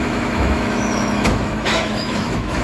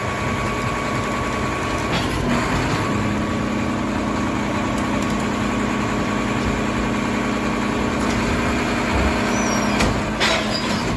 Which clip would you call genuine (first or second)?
second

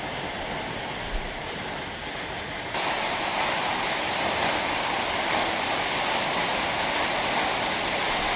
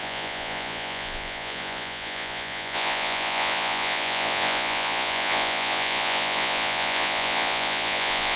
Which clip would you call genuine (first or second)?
first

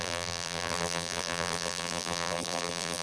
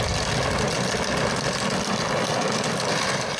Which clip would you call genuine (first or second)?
second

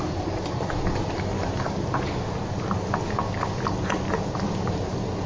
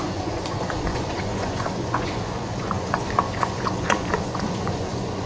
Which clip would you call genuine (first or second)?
first